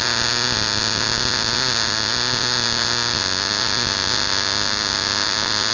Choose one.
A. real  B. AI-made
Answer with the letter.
A